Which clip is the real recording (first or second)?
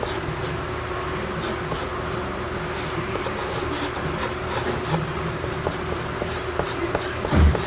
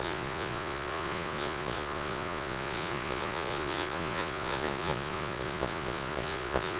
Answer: first